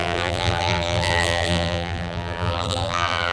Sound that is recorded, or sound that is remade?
remade